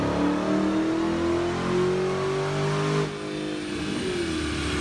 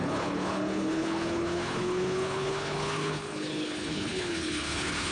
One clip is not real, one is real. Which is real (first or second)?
first